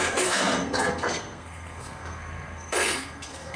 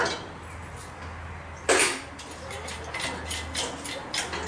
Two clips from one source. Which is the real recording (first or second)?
second